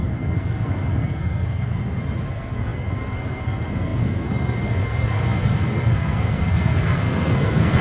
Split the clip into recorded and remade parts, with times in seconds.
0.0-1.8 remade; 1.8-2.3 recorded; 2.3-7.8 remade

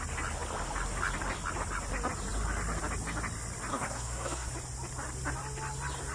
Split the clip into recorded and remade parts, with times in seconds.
0.0-3.7 recorded; 3.7-4.5 remade; 4.5-6.1 recorded

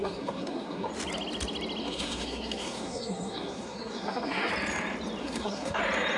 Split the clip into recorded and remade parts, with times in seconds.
0.0-0.9 remade; 0.9-1.8 recorded; 1.8-4.5 remade; 4.5-5.2 recorded; 5.2-5.8 remade; 5.8-6.2 recorded

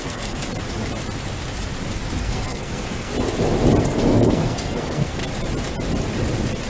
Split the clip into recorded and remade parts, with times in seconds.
0.0-0.4 remade; 0.4-2.2 recorded; 2.2-3.1 remade; 3.1-3.8 recorded; 3.8-5.2 remade; 5.2-6.7 recorded